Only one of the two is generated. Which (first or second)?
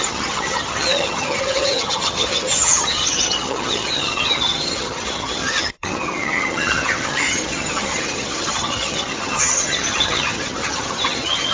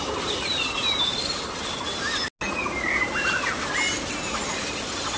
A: first